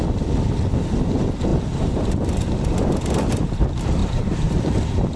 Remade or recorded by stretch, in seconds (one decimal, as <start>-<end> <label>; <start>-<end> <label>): 0.0-4.0 recorded; 4.0-4.8 remade; 4.8-5.2 recorded